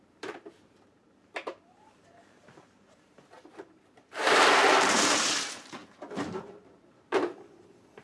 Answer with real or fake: fake